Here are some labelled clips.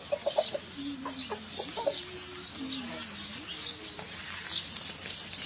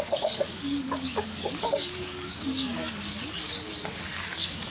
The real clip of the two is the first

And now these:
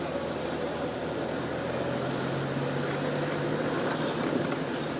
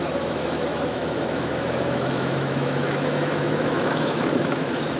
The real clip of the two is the first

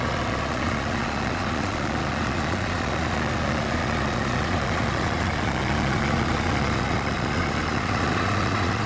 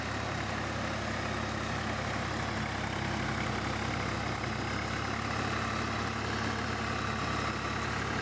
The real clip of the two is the second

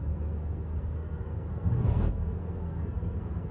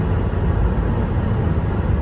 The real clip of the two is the second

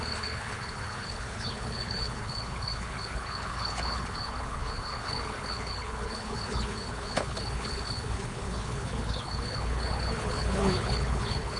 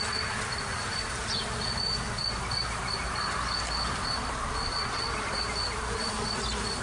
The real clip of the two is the second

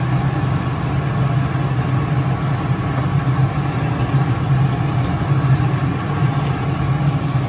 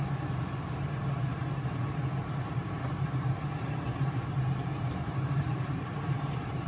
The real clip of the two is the first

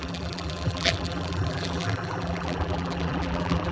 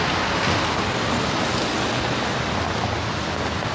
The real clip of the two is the second